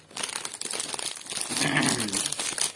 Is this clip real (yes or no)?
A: yes